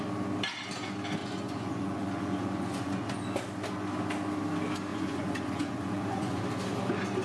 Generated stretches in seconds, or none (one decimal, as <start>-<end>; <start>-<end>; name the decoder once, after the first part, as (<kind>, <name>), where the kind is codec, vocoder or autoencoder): 1.2-3.2 (vocoder, Vocos); 4.9-6.4